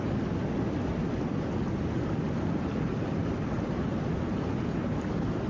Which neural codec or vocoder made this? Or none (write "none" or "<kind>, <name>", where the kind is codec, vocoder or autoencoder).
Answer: none